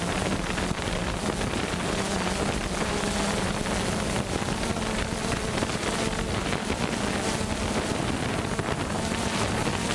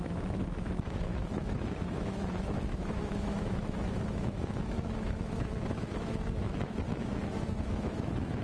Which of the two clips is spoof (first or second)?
second